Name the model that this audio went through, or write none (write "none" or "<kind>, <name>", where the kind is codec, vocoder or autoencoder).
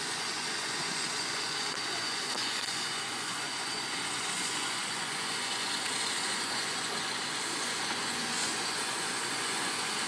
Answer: vocoder, Vocos